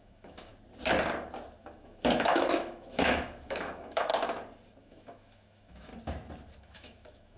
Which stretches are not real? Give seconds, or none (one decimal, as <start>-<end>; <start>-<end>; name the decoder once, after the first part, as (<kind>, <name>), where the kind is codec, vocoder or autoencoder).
0.0-0.5 (autoencoder, DAC-VAE); 1.6-4.1; 4.8-5.9; 6.6-7.4